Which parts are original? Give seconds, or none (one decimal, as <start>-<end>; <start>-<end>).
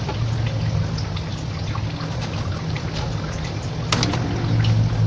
0.0-5.1